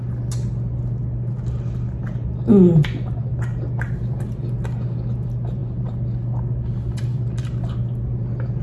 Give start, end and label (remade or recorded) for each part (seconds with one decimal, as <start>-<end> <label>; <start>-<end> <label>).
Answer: 0.0-8.6 recorded